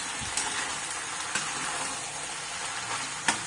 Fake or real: real